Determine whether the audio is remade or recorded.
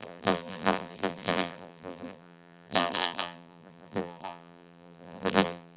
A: remade